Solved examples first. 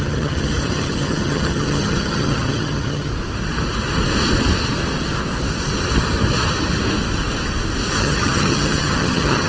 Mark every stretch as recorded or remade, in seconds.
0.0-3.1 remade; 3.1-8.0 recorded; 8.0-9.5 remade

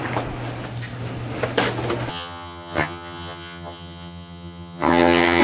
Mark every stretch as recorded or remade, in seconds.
0.0-2.1 recorded; 2.1-5.4 remade

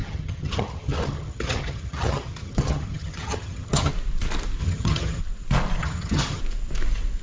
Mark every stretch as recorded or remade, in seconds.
0.0-3.9 remade; 3.9-4.6 recorded; 4.6-5.2 remade; 5.2-5.8 recorded; 5.8-6.4 remade; 6.4-7.2 recorded

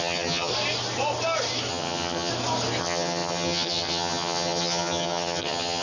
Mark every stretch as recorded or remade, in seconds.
0.0-0.5 remade; 0.5-1.7 recorded; 1.7-2.3 remade; 2.3-2.8 recorded; 2.8-5.8 remade

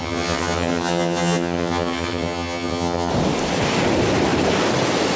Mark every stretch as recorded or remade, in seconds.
0.0-3.1 remade; 3.1-5.2 recorded